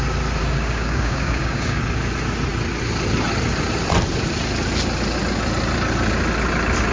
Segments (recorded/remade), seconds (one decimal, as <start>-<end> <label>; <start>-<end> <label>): 0.0-0.4 recorded; 0.4-1.8 remade; 1.8-6.9 recorded